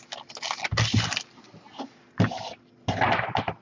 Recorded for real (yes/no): yes